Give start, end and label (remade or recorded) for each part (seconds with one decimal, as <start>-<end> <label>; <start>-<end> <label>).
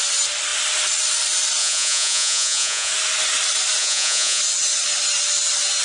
0.0-1.6 recorded; 1.6-2.9 remade; 2.9-3.8 recorded; 3.8-4.4 remade; 4.4-5.8 recorded